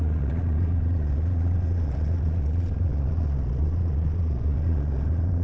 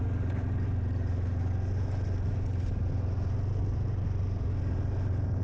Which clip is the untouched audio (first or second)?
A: second